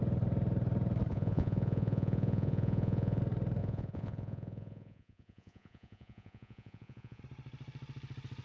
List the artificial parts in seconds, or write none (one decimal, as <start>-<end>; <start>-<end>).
1.1-3.2; 3.6-7.2